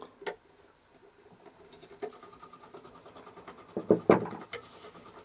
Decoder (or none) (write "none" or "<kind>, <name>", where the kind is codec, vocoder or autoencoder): none